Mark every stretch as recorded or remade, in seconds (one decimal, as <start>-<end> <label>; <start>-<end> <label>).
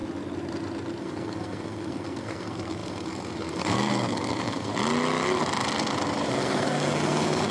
0.0-1.0 recorded; 1.0-4.7 remade; 4.7-6.3 recorded; 6.3-7.5 remade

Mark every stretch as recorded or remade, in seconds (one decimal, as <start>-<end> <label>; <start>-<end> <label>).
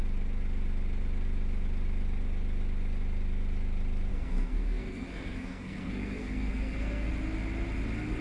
0.0-4.1 recorded; 4.1-7.1 remade; 7.1-8.2 recorded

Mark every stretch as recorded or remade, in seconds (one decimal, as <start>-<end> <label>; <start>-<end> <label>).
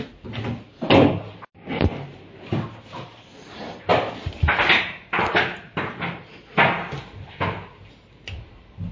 0.0-8.9 recorded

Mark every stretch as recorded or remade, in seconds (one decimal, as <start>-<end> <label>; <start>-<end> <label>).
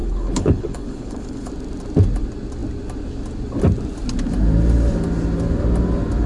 0.0-1.5 remade; 1.5-6.3 recorded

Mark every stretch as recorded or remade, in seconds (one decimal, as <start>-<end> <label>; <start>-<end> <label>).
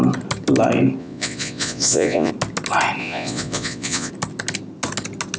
0.0-1.0 recorded; 1.0-2.3 remade; 2.3-3.0 recorded; 3.0-4.1 remade; 4.1-5.4 recorded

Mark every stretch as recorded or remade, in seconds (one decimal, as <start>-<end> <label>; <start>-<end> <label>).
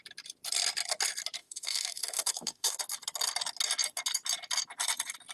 0.0-1.4 recorded; 1.4-2.8 remade; 2.8-5.3 recorded